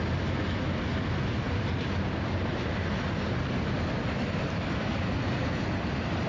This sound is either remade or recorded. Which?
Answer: recorded